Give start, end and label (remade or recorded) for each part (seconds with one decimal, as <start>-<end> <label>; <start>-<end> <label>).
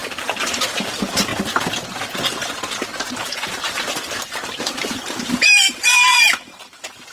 0.0-1.3 remade; 1.3-3.1 recorded; 3.1-7.1 remade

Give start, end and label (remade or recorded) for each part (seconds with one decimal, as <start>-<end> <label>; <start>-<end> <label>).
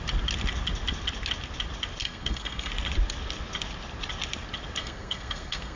0.0-2.0 recorded; 2.0-2.7 remade; 2.7-4.8 recorded; 4.8-5.8 remade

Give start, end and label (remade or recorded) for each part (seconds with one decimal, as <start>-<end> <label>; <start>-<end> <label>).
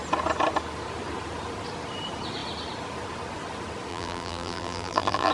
0.0-3.9 recorded; 3.9-5.3 remade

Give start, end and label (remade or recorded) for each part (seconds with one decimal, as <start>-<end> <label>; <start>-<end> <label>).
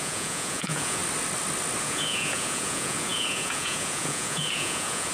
0.0-1.0 remade; 1.0-1.8 recorded; 1.8-5.1 remade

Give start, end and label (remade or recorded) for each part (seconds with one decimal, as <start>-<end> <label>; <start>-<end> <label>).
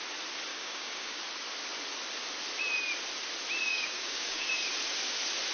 0.0-0.5 recorded; 0.5-1.2 remade; 1.2-3.7 recorded; 3.7-4.5 remade; 4.5-5.5 recorded